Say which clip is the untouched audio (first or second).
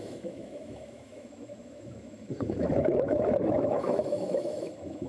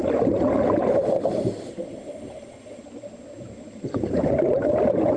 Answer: second